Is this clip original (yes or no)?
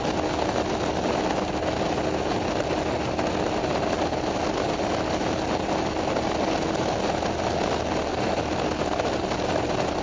yes